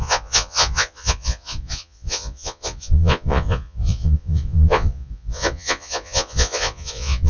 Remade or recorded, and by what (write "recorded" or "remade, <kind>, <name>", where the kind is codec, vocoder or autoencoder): remade, vocoder, Vocos